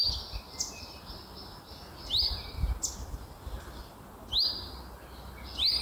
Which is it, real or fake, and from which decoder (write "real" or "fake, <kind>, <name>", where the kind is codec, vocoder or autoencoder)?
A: real